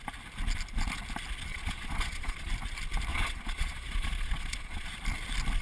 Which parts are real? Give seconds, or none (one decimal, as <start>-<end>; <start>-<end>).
0.0-1.5; 2.5-3.1; 4.9-5.6